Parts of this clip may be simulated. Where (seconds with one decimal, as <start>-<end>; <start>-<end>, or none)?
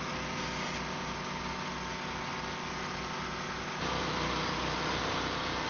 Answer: none